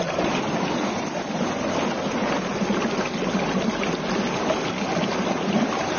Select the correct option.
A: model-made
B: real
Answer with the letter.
B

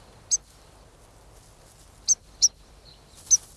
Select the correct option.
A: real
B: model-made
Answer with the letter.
A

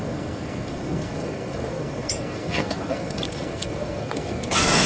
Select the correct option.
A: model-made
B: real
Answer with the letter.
A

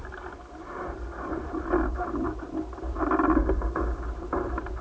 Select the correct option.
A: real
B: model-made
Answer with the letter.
A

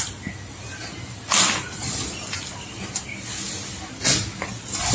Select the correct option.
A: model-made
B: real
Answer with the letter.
B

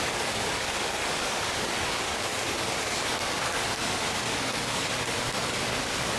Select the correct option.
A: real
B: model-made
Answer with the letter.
B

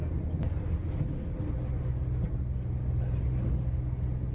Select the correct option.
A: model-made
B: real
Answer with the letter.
B